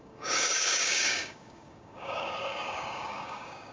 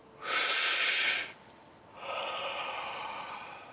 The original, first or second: second